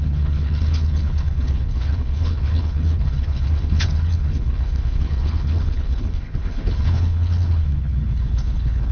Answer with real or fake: fake